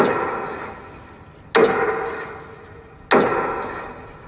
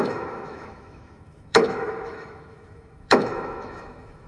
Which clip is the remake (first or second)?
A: second